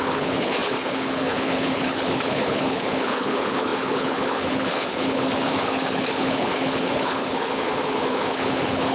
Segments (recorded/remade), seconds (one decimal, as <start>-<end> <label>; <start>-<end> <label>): 0.0-8.9 remade